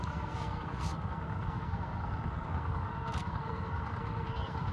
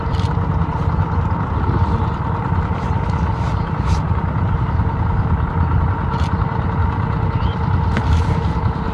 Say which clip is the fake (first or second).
first